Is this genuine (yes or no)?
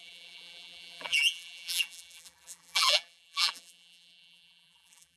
no